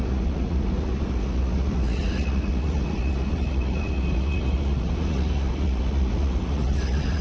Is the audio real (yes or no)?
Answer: no